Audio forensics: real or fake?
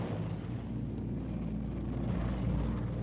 real